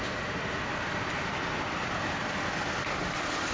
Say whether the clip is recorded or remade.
recorded